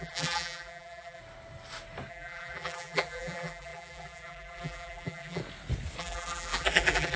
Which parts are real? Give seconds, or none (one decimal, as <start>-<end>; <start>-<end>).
1.2-2.1; 5.4-6.0